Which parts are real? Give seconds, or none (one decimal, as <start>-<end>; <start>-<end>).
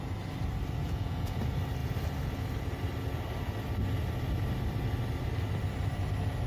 0.0-0.8; 1.4-6.5